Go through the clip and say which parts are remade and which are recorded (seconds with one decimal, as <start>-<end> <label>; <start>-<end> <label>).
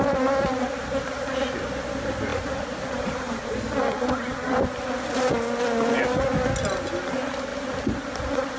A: 0.0-2.3 recorded; 2.3-3.5 remade; 3.5-8.6 recorded